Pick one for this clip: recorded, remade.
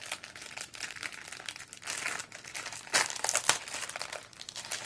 recorded